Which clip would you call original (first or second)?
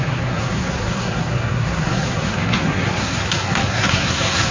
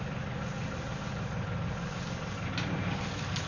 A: second